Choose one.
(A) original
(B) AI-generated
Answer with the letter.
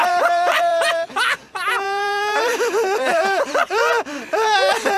B